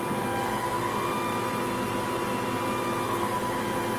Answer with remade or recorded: recorded